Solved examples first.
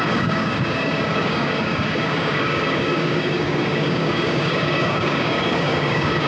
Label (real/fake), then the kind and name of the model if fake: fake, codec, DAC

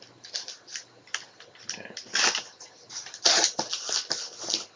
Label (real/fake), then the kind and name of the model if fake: real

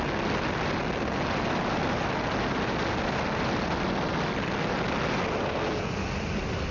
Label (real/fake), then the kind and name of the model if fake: real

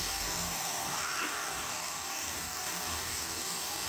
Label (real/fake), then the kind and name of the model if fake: fake, codec, DAC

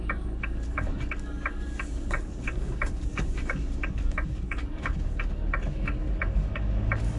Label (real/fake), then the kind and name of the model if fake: fake, codec, DAC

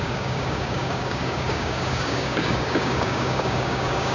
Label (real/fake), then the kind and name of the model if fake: fake, codec, DAC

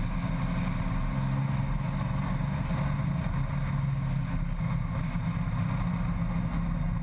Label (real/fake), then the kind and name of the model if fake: real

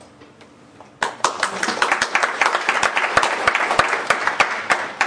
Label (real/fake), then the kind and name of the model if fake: real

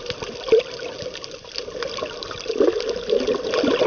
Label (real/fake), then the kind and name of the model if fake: real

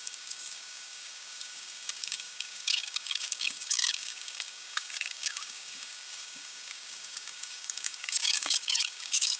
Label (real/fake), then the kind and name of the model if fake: fake, codec, DAC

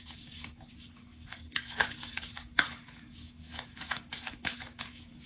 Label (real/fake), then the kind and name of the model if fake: fake, codec, DAC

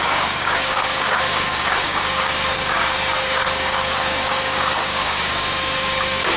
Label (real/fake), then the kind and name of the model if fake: fake, codec, DAC